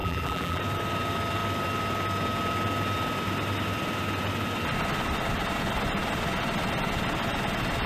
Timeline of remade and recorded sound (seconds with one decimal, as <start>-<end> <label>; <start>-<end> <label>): 0.0-0.6 remade; 0.6-7.9 recorded